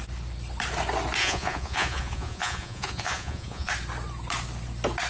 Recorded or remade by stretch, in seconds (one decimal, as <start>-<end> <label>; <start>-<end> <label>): 0.0-1.2 recorded; 1.2-3.7 remade; 3.7-5.1 recorded